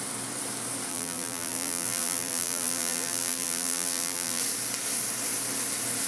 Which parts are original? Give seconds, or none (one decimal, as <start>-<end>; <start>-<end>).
0.0-0.9; 4.4-6.1